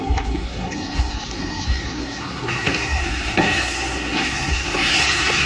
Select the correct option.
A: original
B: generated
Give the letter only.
B